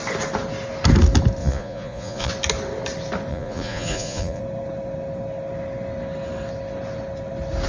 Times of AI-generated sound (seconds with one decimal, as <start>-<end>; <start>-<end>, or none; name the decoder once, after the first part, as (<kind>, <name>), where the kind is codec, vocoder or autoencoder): 1.4-2.3 (vocoder, Vocos); 3.3-4.4